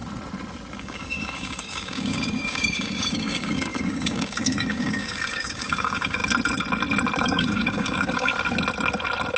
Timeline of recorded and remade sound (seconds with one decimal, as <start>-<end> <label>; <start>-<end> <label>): 0.0-0.8 recorded; 0.8-6.2 remade; 6.2-7.2 recorded; 7.2-8.3 remade; 8.3-9.4 recorded